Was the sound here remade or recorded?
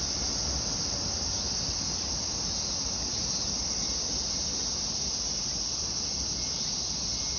recorded